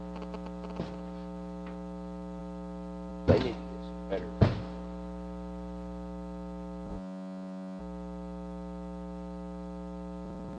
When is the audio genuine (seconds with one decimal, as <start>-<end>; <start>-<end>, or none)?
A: 0.0-6.9; 7.8-10.6